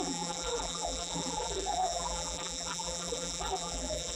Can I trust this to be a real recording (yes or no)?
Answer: no